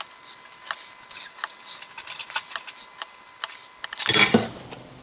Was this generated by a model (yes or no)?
no